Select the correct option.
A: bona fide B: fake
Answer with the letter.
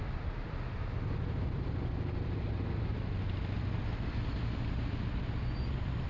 A